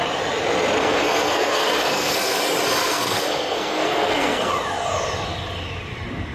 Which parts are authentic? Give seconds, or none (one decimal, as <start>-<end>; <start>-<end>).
0.0-0.8; 2.4-2.8; 4.5-6.3